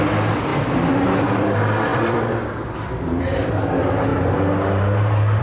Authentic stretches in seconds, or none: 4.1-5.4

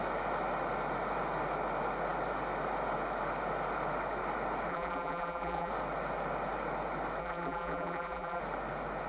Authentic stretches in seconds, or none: 0.0-4.7; 5.7-7.2; 8.4-9.1

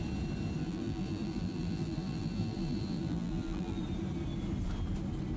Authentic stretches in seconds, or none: 0.0-0.6; 3.8-5.4

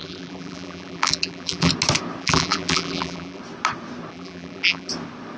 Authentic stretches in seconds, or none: 1.7-2.2; 3.4-4.1; 4.9-5.4

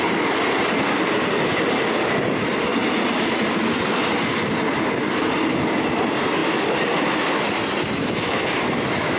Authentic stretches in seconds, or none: 0.0-9.2

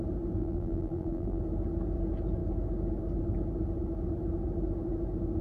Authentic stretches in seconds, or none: 0.0-0.4; 1.4-5.4

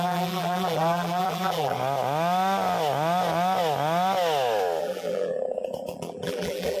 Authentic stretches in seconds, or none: 1.8-4.8

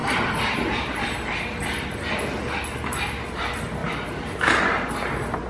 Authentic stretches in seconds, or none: 0.0-3.8; 4.8-5.5